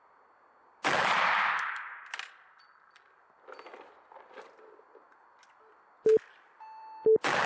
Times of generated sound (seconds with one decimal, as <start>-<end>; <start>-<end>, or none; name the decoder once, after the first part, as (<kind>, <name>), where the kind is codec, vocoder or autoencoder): none